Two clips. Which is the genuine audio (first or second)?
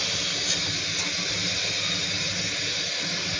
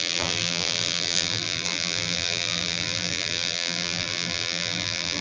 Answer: first